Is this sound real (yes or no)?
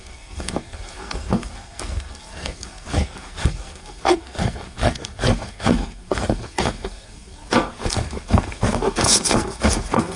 no